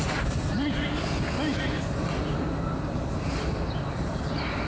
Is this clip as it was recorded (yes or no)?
yes